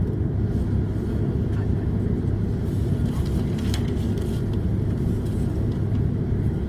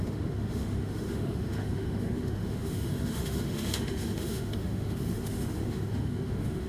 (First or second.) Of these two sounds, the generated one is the second